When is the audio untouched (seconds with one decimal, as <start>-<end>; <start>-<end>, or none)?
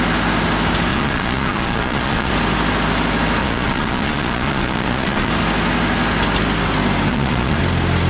0.0-0.9; 2.3-3.4; 5.3-7.1; 7.6-8.1